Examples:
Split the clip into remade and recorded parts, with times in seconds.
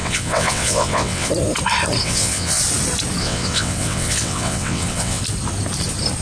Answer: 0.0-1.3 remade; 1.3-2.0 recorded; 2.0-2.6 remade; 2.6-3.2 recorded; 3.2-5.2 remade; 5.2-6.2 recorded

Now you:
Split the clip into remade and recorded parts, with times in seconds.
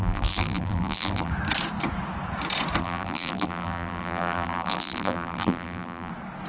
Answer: 0.0-1.3 remade; 1.3-2.8 recorded; 2.8-6.1 remade; 6.1-6.5 recorded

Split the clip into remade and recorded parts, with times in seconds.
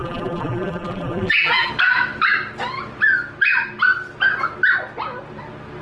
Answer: 0.0-1.7 remade; 1.7-5.8 recorded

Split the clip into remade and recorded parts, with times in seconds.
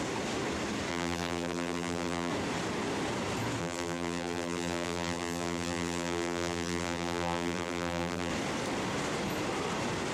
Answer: 0.0-0.9 recorded; 0.9-2.3 remade; 2.3-3.6 recorded; 3.6-8.3 remade; 8.3-10.1 recorded